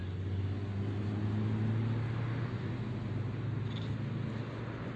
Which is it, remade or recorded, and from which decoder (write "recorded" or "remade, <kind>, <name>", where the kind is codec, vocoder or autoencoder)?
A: recorded